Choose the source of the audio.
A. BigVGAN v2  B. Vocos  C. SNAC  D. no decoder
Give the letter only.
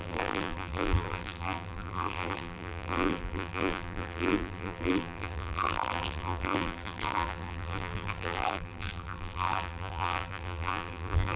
A